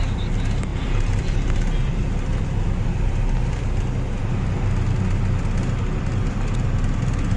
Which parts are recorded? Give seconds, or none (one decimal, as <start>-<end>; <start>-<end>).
0.0-0.7; 3.8-7.4